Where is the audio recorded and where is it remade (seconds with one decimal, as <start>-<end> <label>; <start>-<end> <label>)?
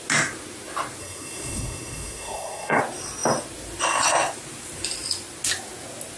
0.0-1.0 recorded; 1.0-2.8 remade; 2.8-6.2 recorded